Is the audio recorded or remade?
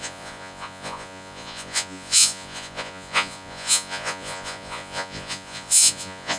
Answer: remade